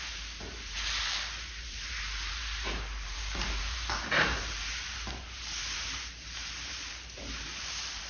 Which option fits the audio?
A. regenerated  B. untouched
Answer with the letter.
A